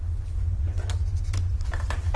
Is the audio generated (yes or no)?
no